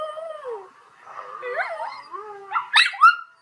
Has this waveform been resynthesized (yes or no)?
no